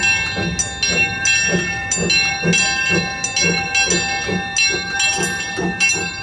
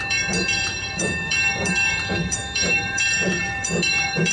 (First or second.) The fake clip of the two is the second